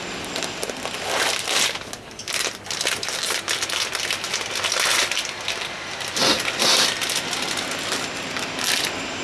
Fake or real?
real